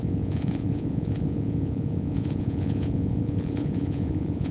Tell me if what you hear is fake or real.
fake